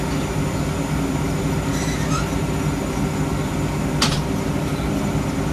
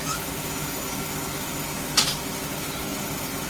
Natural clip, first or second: first